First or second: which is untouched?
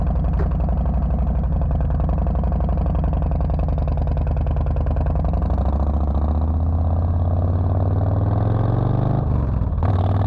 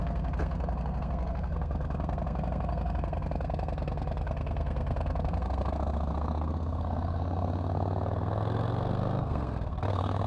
first